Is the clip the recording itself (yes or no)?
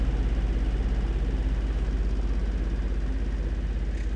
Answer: yes